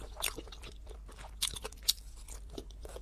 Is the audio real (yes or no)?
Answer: yes